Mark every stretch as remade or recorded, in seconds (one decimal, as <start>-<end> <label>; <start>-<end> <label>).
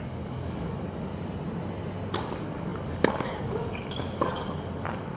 0.0-1.1 remade; 1.1-2.1 recorded; 2.1-5.2 remade